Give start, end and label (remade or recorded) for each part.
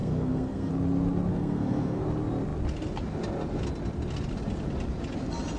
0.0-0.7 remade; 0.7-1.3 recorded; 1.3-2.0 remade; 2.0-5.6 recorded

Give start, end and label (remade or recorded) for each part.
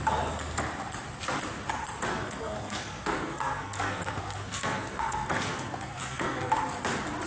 0.0-2.1 recorded; 2.1-6.5 remade; 6.5-7.3 recorded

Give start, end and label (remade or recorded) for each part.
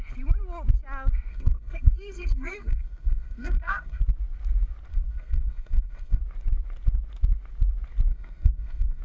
0.0-1.3 recorded; 1.3-4.0 remade; 4.0-4.9 recorded; 4.9-6.2 remade; 6.2-8.1 recorded; 8.1-9.0 remade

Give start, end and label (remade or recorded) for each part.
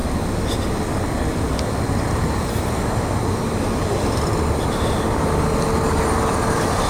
0.0-6.9 recorded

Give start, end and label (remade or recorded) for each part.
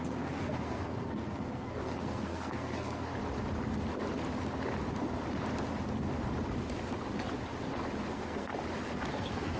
0.0-3.1 remade; 3.1-8.1 recorded; 8.1-8.5 remade; 8.5-9.1 recorded; 9.1-9.6 remade